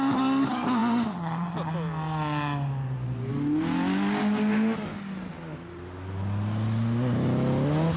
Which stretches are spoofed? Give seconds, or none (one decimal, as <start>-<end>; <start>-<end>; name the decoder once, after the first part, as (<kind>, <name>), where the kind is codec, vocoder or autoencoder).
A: none